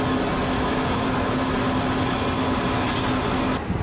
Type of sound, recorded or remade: recorded